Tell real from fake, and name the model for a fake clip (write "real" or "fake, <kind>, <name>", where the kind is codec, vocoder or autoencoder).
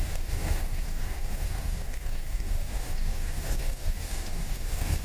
fake, codec, DAC